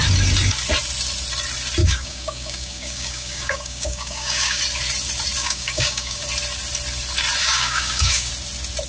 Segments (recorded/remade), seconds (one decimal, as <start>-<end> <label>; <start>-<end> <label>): 0.0-1.8 recorded; 1.8-4.6 remade; 4.6-5.4 recorded; 5.4-6.2 remade; 6.2-7.4 recorded; 7.4-8.3 remade; 8.3-8.9 recorded